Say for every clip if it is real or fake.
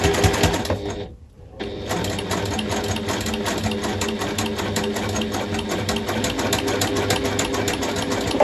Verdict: real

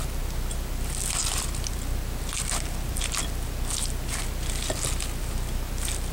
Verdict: real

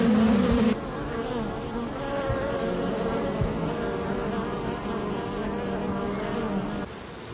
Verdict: real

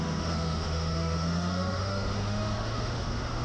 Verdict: fake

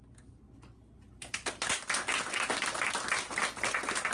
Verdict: real